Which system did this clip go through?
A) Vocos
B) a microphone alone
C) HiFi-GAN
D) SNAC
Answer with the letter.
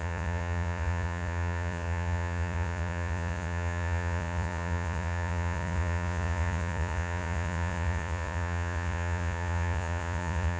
A